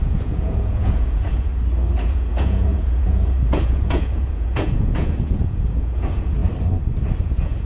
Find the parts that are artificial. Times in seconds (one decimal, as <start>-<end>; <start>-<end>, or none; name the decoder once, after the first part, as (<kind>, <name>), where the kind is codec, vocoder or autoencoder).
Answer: 0.0-1.5 (vocoder, Vocos); 2.0-6.4; 7.2-7.7

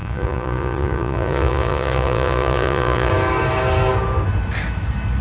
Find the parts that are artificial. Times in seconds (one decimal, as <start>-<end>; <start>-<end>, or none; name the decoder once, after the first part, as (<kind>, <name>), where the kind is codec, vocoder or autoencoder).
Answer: 0.0-3.1 (vocoder, Vocos)

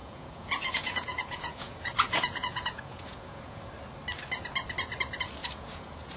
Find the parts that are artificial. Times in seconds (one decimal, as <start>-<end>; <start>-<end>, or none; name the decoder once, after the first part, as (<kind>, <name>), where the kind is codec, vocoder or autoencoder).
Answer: 0.0-3.7 (vocoder, Vocos); 5.4-6.2

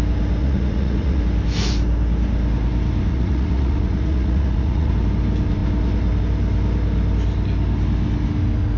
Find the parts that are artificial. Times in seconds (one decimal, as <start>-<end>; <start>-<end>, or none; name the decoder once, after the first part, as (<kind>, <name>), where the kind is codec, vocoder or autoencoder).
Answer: 0.4-1.2 (vocoder, Vocos); 3.1-4.9

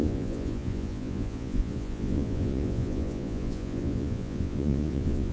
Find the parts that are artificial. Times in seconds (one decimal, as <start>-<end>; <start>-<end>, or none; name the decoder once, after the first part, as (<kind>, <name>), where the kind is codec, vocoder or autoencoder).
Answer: 0.0-5.3 (vocoder, Vocos)

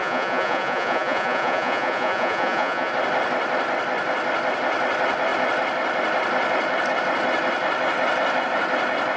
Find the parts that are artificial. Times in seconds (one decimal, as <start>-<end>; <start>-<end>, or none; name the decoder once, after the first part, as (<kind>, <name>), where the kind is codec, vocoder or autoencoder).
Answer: 0.0-2.9 (vocoder, Vocos)

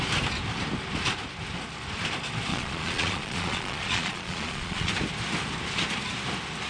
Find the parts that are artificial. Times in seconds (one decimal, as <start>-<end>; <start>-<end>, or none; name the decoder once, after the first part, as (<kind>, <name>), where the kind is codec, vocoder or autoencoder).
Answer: 2.5-4.9 (vocoder, Vocos)

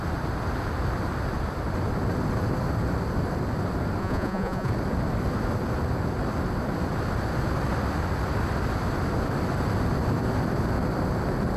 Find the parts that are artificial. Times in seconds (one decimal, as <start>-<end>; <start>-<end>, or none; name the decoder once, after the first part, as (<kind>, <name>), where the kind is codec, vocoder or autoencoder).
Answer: 4.0-4.7 (vocoder, Vocos)